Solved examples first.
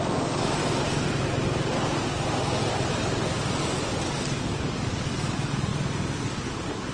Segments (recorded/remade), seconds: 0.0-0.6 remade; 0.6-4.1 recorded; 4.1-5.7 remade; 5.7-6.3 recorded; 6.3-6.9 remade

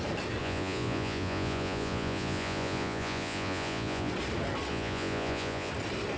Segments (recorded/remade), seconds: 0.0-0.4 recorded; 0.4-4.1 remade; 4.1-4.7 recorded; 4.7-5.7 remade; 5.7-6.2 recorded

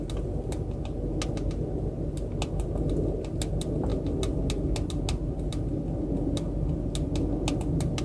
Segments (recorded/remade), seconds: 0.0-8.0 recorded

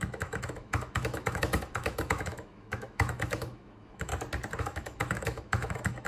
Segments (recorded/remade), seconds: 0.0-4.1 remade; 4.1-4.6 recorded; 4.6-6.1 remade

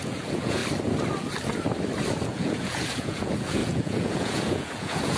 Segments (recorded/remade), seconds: 0.0-0.6 remade; 0.6-2.3 recorded; 2.3-5.2 remade

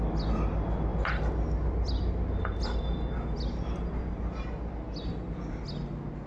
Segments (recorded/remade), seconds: 0.0-6.3 recorded

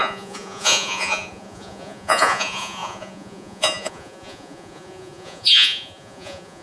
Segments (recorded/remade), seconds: 0.0-6.6 remade